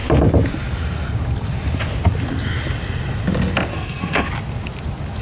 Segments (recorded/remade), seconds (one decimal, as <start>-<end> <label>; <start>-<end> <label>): 0.0-3.7 recorded; 3.7-4.3 remade; 4.3-5.2 recorded